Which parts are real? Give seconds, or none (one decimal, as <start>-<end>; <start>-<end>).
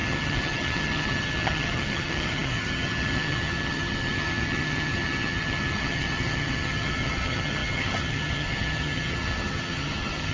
none